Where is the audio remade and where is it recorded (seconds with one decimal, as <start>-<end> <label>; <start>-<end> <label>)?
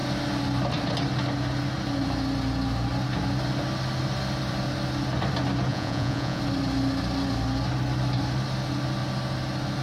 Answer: 0.0-5.7 recorded; 5.7-6.4 remade; 6.4-9.8 recorded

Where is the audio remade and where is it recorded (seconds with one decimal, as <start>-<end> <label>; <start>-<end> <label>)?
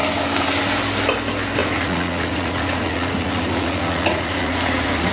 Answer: 0.0-1.6 recorded; 1.6-5.1 remade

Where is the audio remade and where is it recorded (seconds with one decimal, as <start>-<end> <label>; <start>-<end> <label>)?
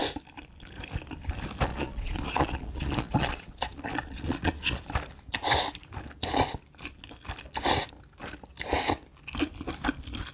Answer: 0.0-1.7 recorded; 1.7-4.9 remade; 4.9-10.3 recorded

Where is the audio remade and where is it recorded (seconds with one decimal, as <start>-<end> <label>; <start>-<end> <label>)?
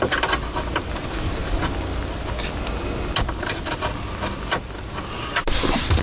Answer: 0.0-6.0 recorded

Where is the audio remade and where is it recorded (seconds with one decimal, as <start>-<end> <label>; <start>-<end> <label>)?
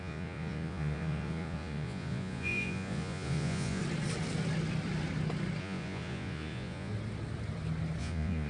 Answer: 0.0-3.8 remade; 3.8-5.6 recorded; 5.6-6.9 remade; 6.9-8.0 recorded; 8.0-8.5 remade